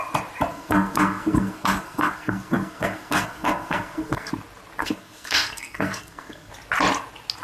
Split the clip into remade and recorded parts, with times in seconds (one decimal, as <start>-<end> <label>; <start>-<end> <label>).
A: 0.0-0.5 recorded; 0.5-4.3 remade; 4.3-4.8 recorded; 4.8-6.5 remade; 6.5-7.4 recorded